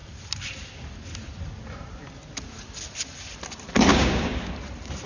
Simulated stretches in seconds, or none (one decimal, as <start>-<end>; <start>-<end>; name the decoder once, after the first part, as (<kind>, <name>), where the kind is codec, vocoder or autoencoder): 3.9-4.5 (codec, DAC)